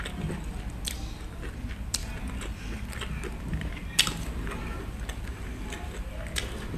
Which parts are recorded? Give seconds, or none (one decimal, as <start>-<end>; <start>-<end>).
0.0-6.8